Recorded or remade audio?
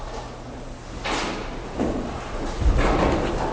recorded